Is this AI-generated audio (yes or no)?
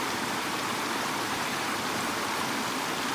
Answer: no